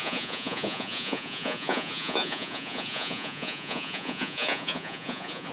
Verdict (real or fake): fake